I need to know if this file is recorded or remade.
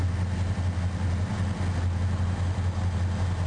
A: recorded